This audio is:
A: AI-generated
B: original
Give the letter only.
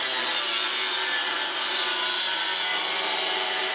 B